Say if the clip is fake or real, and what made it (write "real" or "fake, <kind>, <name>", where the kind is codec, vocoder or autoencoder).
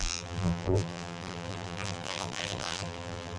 fake, vocoder, BigVGAN v2